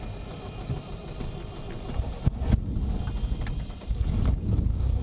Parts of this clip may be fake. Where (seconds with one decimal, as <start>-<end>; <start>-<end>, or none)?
3.9-5.0